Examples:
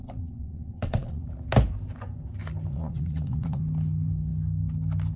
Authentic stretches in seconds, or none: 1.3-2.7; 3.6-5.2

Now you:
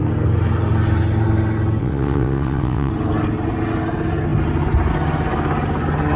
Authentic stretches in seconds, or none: 0.0-1.8; 2.9-6.2

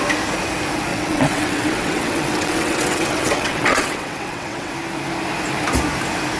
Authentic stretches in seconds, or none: 0.0-0.9; 4.7-6.4

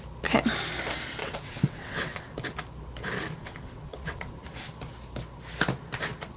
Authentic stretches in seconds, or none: 0.0-1.2; 2.2-3.4; 4.3-6.4

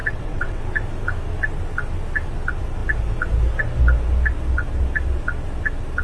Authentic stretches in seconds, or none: 0.6-6.0

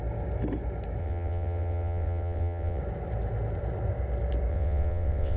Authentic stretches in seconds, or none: 0.0-1.0; 2.8-4.5

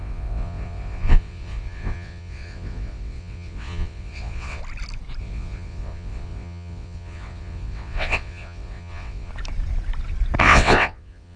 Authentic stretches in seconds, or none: 4.6-5.2; 9.3-10.4

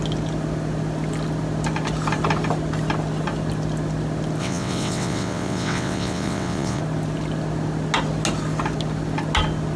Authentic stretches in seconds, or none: 0.0-4.4; 6.8-9.8